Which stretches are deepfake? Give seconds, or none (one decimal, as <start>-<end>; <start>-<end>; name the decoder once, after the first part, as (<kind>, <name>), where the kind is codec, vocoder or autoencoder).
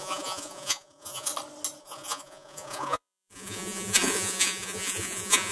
0.0-1.3 (vocoder, Vocos); 1.8-5.5